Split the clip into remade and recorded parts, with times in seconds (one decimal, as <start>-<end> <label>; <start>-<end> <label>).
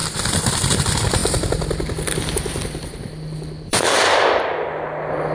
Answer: 0.0-5.3 remade